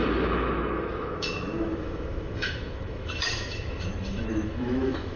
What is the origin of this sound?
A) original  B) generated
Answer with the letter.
B